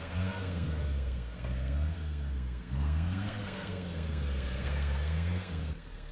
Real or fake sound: fake